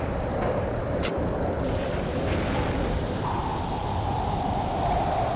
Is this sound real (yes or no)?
yes